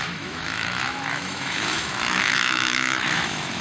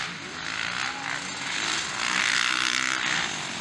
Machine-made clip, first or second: first